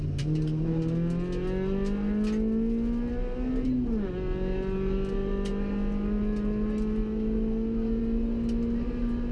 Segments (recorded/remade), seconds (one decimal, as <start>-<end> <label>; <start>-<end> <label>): 0.0-9.3 recorded

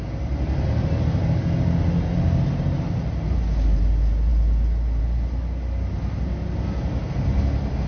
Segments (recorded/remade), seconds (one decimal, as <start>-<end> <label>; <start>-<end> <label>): 0.0-7.9 recorded

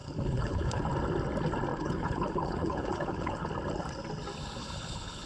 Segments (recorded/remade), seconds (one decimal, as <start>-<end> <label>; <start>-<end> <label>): 0.0-0.9 remade; 0.9-1.7 recorded; 1.7-3.5 remade; 3.5-4.6 recorded; 4.6-5.3 remade